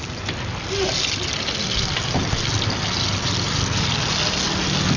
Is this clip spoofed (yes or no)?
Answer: no